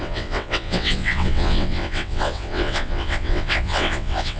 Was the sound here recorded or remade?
remade